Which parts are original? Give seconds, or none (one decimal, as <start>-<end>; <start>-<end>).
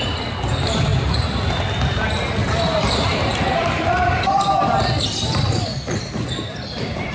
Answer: 0.0-2.4